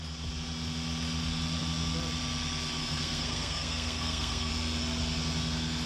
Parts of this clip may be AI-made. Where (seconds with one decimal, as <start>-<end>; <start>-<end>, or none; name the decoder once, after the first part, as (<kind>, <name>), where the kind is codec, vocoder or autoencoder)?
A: 2.8-4.5 (codec, SNAC)